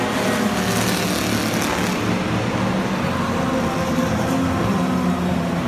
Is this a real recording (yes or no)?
yes